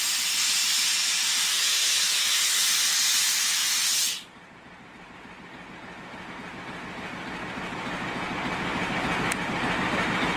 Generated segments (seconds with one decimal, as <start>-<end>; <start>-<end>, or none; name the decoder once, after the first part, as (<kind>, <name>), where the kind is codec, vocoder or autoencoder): 1.5-2.6 (autoencoder, DAC-VAE)